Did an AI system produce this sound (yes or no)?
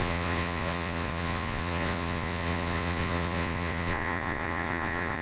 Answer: yes